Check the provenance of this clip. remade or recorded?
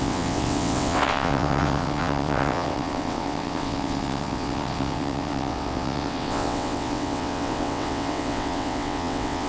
remade